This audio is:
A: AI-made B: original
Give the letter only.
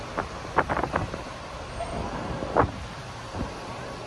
B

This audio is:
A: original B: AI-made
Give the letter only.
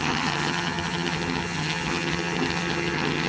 B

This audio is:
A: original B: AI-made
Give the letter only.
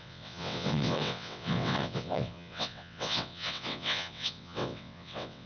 B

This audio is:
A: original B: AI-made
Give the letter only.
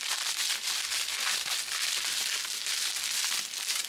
A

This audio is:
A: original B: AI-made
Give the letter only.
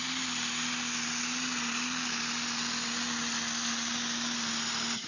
A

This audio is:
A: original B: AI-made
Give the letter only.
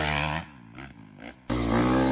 A